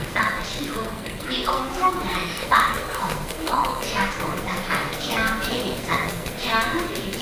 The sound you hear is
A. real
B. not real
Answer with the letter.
B